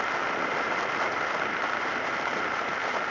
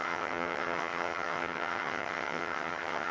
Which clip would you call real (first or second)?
first